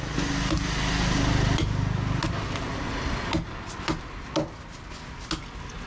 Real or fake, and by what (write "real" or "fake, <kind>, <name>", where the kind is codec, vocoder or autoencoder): real